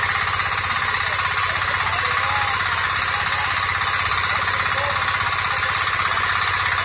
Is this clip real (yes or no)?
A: yes